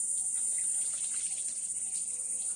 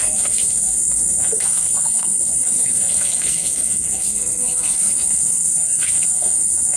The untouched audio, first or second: first